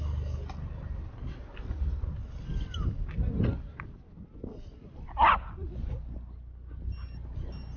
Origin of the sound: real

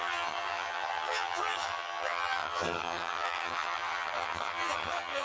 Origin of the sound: fake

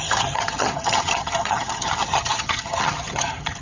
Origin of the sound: fake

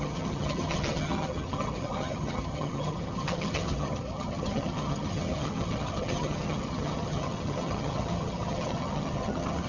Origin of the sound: fake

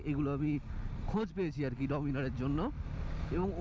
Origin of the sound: real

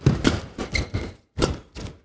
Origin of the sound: real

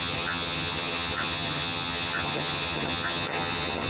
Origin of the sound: fake